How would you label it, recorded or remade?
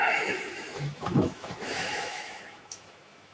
remade